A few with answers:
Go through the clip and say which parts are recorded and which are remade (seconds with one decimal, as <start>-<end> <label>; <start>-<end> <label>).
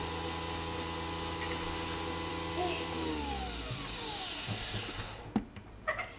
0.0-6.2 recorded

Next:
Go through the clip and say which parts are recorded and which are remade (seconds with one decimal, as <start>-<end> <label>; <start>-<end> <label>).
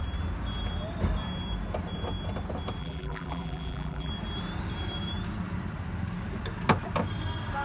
0.0-2.8 recorded; 2.8-4.1 remade; 4.1-7.6 recorded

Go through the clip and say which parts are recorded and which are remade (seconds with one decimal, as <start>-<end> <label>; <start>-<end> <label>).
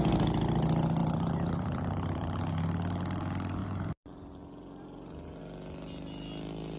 0.0-1.0 recorded; 1.0-2.4 remade; 2.4-3.6 recorded; 3.6-5.4 remade; 5.4-6.8 recorded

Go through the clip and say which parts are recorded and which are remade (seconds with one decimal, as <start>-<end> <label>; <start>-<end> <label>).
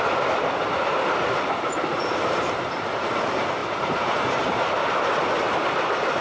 0.0-1.9 recorded; 1.9-2.6 remade; 2.6-3.6 recorded; 3.6-5.1 remade; 5.1-6.2 recorded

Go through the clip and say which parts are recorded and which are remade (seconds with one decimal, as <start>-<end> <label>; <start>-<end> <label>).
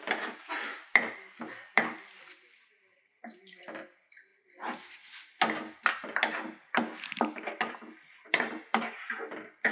0.0-4.3 remade; 4.3-5.8 recorded; 5.8-6.2 remade; 6.2-6.8 recorded; 6.8-9.7 remade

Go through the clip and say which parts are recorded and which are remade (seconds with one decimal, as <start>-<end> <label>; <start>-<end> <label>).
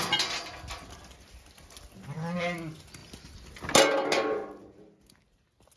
0.0-5.8 recorded